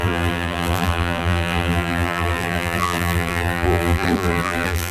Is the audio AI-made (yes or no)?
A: yes